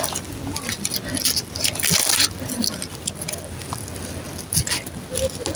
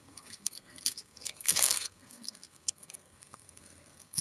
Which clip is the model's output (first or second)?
second